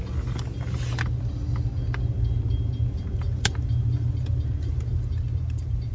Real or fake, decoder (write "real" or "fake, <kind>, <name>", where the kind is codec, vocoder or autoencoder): real